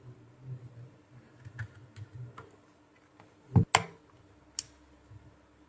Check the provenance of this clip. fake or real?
real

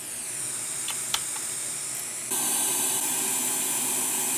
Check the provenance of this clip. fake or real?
real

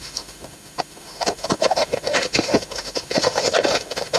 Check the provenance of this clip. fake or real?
fake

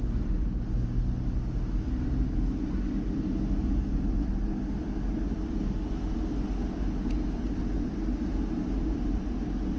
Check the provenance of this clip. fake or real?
real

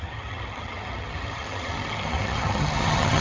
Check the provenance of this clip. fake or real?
fake